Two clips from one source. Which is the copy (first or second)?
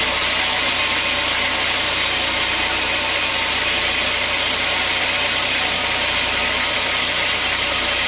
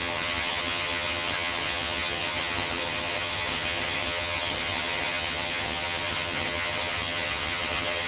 second